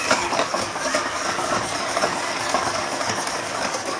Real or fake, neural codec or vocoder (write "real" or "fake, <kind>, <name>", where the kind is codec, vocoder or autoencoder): fake, codec, DAC